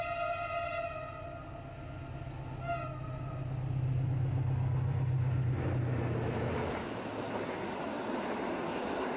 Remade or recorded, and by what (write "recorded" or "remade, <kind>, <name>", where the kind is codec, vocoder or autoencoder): recorded